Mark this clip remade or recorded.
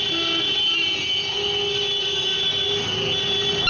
recorded